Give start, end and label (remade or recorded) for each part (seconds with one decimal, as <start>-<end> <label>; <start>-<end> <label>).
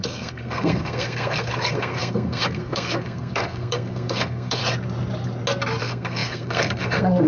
0.0-4.6 remade; 4.6-5.8 recorded; 5.8-7.3 remade